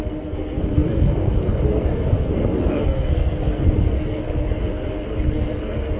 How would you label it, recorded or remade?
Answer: remade